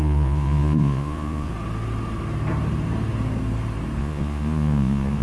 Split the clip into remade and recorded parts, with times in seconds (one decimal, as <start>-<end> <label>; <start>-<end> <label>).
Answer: 0.0-1.5 remade; 1.5-4.0 recorded; 4.0-5.2 remade